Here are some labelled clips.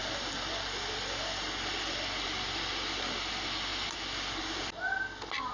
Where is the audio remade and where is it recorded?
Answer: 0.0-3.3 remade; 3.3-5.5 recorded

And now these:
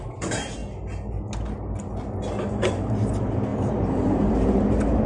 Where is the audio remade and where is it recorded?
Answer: 0.0-0.6 remade; 0.6-2.5 recorded; 2.5-5.1 remade

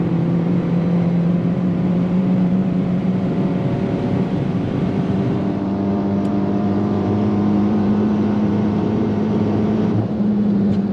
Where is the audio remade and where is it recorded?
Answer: 0.0-10.9 remade